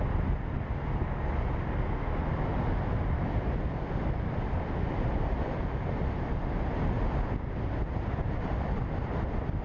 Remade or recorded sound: recorded